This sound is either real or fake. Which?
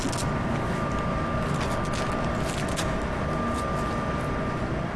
real